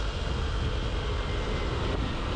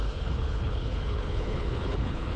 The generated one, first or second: second